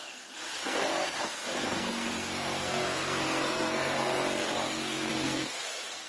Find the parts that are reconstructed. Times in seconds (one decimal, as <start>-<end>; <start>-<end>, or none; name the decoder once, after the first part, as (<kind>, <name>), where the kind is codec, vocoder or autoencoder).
0.0-6.1 (codec, SNAC)